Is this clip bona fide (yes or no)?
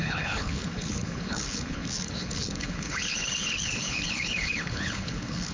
no